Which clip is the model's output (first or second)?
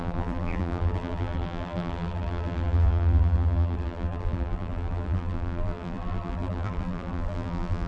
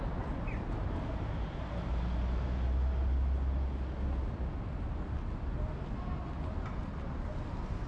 first